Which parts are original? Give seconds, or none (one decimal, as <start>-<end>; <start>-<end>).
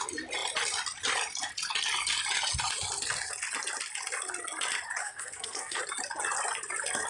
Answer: 0.0-5.0; 5.8-7.1